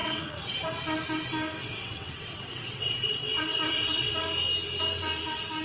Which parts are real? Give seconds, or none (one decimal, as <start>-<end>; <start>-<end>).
0.6-1.6; 4.1-5.6